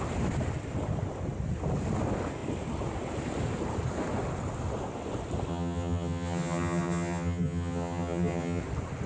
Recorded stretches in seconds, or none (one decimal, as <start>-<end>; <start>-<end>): 0.0-5.5; 8.6-9.1